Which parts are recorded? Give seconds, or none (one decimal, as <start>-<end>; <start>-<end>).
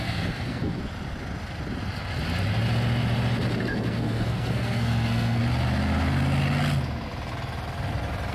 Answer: 0.8-3.6; 5.4-8.3